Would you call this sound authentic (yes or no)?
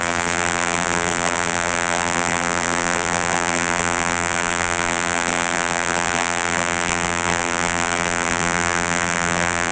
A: no